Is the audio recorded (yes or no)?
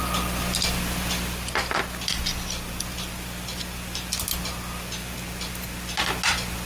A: yes